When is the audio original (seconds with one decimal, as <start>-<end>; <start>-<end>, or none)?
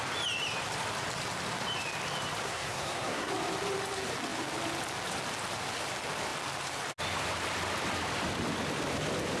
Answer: 0.0-2.4; 3.3-9.4